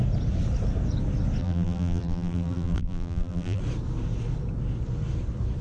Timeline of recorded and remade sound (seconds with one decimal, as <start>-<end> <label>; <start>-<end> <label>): 0.0-1.4 recorded; 1.4-3.6 remade; 3.6-5.6 recorded